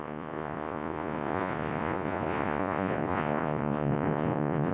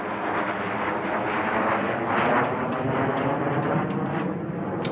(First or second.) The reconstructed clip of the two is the first